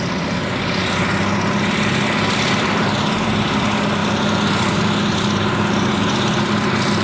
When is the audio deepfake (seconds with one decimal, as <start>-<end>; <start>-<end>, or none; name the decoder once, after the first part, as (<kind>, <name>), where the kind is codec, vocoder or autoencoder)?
none

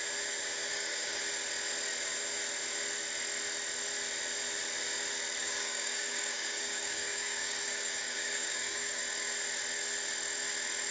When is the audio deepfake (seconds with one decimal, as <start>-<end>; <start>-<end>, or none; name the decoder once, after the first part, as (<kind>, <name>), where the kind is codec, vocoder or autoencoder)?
0.7-1.2 (codec, DAC); 5.4-9.0

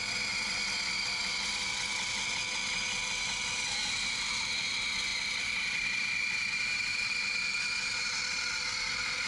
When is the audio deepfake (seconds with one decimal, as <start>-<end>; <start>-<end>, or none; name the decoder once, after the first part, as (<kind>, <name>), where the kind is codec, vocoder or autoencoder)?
none

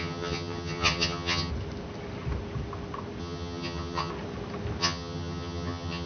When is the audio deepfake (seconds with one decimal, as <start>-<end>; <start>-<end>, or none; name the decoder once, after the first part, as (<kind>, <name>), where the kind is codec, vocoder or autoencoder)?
0.0-1.5 (vocoder, HiFi-GAN); 3.2-4.1; 4.8-6.1

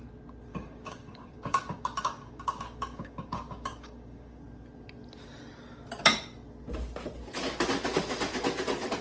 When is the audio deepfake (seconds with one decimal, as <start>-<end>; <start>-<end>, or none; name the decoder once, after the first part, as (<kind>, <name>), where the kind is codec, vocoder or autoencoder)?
0.5-4.4 (codec, DAC)